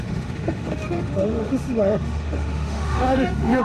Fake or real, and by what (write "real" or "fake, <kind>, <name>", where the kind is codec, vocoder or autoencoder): fake, autoencoder, DAC-VAE